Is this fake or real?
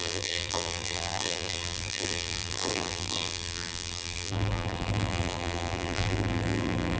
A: fake